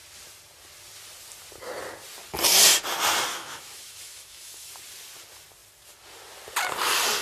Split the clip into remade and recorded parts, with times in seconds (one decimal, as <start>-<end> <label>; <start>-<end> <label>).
0.0-3.3 recorded; 3.3-4.7 remade; 4.7-7.2 recorded